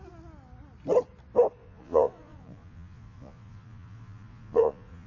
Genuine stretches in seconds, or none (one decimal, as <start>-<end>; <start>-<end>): 0.0-1.6

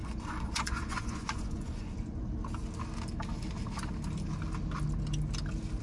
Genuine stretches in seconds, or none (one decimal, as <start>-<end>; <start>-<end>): 2.2-5.8

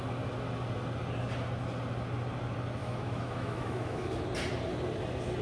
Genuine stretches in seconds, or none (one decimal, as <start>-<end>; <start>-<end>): 0.0-2.8; 4.2-5.4

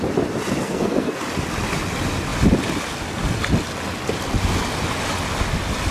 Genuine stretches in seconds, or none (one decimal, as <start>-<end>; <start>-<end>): 0.0-0.6; 1.2-5.9

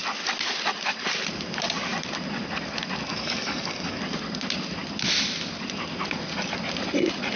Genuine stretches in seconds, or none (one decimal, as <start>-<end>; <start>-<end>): 0.0-3.1; 4.0-7.4

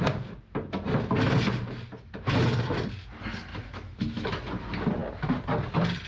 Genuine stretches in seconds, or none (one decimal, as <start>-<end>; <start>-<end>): 0.0-3.5; 4.4-6.1

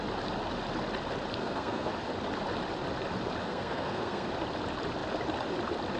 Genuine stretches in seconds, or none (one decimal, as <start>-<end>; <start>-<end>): 0.0-1.4; 1.9-3.4; 4.3-6.0